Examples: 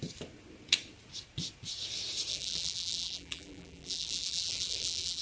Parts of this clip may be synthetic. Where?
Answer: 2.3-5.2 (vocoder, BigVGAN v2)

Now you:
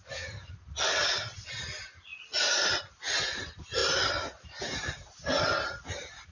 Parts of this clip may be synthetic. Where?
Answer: 1.0-1.6 (vocoder, BigVGAN v2); 2.1-2.8; 5.2-6.3

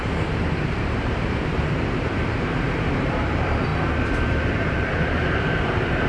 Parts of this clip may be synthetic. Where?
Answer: 0.0-3.7 (vocoder, BigVGAN v2); 4.5-6.1

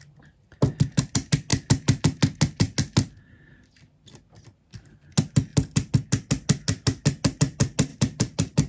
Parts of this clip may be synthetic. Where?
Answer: 7.9-8.7 (vocoder, BigVGAN v2)

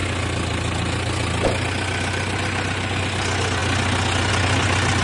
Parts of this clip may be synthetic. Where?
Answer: none

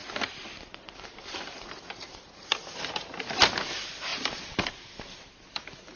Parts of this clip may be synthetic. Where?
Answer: 0.0-3.2 (vocoder, BigVGAN v2); 4.1-5.6